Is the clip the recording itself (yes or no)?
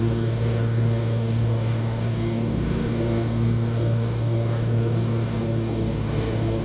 no